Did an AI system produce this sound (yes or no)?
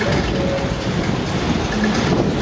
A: no